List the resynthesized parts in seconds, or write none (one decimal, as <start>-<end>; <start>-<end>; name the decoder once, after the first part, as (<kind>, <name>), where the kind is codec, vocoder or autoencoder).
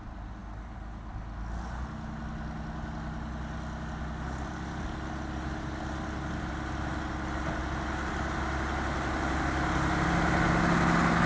none